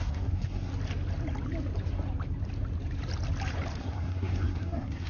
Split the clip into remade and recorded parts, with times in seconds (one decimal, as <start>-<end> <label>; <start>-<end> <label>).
0.0-0.7 remade; 0.7-3.8 recorded; 3.8-5.1 remade